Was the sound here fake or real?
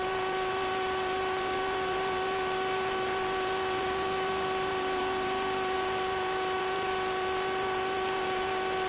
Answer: fake